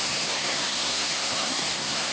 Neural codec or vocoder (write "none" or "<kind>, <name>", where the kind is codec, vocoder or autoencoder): codec, SNAC